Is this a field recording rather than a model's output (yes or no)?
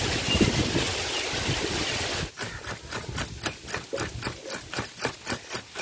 yes